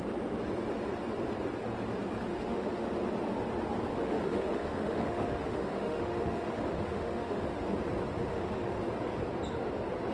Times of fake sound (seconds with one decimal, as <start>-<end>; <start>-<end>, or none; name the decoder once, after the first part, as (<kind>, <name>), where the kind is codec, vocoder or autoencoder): 2.3-2.9 (autoencoder, DAC-VAE); 3.9-7.6; 8.3-8.8